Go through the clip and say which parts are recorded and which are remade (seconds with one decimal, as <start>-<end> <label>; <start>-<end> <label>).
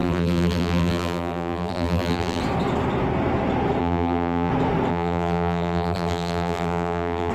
0.0-2.4 remade; 2.4-3.8 recorded; 3.8-4.5 remade; 4.5-4.9 recorded; 4.9-7.3 remade